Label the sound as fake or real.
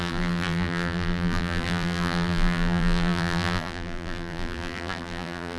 fake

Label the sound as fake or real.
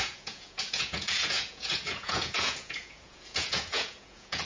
fake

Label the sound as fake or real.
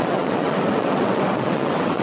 fake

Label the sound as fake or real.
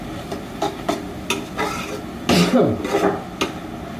real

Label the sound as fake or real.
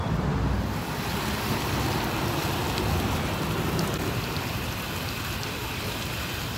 real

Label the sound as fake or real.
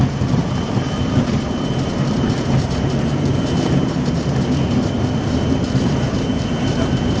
fake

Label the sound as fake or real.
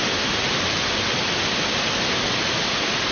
real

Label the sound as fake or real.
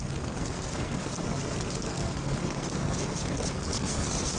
fake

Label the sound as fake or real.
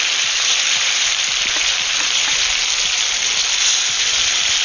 real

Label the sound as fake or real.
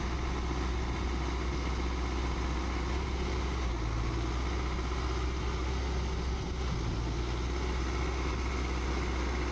real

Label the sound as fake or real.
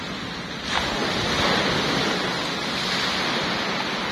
real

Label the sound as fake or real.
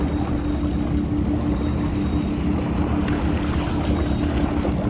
real